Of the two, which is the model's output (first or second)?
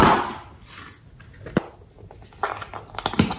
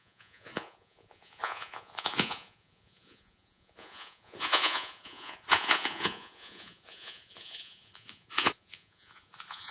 second